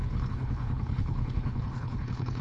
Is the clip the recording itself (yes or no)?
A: no